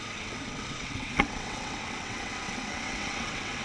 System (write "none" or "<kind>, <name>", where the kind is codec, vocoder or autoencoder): vocoder, WaveNeXt